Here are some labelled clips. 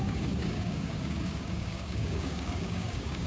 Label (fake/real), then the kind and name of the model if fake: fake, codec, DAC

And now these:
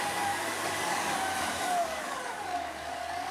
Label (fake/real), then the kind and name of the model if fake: fake, codec, DAC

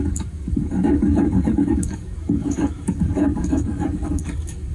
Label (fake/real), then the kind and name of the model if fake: fake, codec, DAC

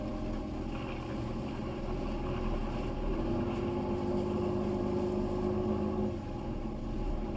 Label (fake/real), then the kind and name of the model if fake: real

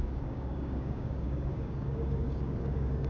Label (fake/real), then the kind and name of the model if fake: fake, codec, DAC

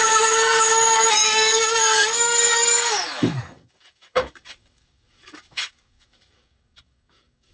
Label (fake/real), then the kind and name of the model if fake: fake, codec, DAC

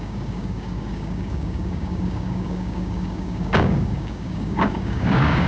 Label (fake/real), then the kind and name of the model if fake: fake, codec, DAC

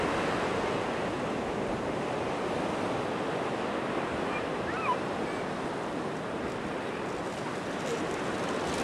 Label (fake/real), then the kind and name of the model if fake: real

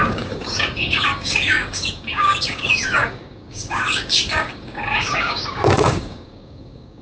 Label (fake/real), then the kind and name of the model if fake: fake, codec, DAC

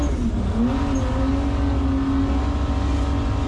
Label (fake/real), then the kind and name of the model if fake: real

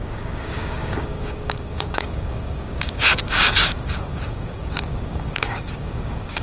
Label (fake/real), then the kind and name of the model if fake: fake, codec, DAC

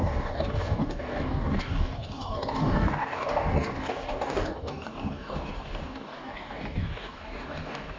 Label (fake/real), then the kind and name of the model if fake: fake, codec, DAC